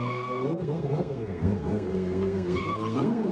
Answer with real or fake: fake